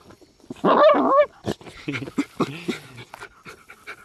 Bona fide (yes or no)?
yes